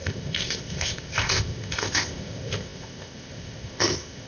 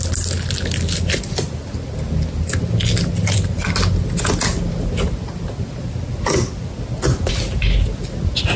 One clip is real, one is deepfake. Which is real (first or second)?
second